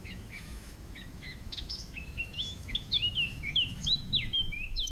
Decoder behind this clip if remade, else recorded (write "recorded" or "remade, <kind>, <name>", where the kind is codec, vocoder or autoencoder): remade, autoencoder, DAC-VAE